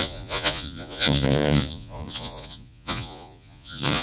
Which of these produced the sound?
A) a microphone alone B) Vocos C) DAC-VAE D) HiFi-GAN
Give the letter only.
B